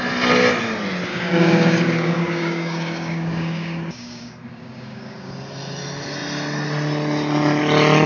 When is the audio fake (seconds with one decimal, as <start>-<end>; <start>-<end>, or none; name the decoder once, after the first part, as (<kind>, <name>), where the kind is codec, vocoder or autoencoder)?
1.1-5.3 (codec, DAC)

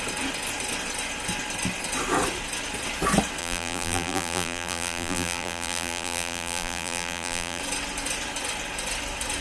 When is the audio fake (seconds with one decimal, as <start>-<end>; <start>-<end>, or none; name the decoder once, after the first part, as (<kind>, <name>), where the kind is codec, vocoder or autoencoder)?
3.4-7.6 (vocoder, BigVGAN v2)

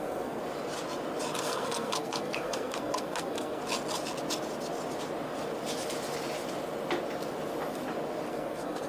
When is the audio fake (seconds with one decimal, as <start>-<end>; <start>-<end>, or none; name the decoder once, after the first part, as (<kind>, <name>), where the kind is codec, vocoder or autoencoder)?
0.0-0.4 (codec, SNAC); 1.4-3.6; 8.3-8.9

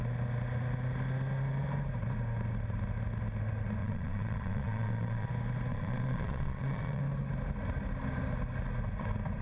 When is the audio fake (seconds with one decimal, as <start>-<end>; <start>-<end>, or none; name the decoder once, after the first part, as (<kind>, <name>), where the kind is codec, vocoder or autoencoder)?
3.8-5.3 (vocoder, Vocos); 5.7-7.0

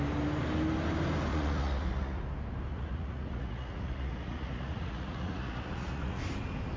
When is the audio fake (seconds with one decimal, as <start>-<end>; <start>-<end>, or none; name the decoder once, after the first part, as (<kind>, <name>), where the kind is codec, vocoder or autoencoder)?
1.3-2.2 (vocoder, Vocos); 2.7-6.2

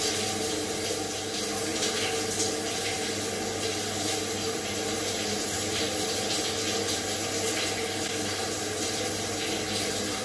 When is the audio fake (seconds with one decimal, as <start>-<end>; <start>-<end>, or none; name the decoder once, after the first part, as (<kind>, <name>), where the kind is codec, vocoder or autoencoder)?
none

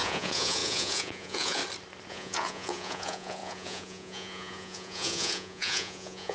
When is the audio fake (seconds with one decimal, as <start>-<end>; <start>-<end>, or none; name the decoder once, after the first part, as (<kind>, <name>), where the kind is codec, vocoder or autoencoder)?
0.0-1.6 (vocoder, Vocos); 2.1-6.3